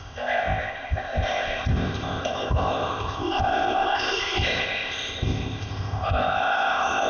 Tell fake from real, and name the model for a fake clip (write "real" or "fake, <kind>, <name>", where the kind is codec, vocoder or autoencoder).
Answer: fake, codec, ZipCodec